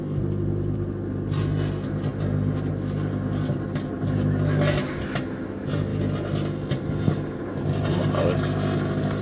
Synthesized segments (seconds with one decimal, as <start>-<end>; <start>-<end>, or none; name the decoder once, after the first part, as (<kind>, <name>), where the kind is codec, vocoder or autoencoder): none